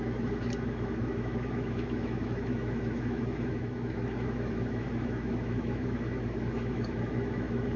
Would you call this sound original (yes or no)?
no